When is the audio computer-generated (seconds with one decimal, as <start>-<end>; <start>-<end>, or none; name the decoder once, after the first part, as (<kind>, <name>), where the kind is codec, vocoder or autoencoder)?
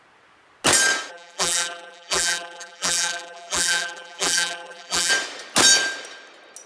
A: 1.1-5.1 (vocoder, BigVGAN v2)